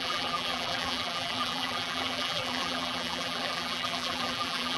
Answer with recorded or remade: remade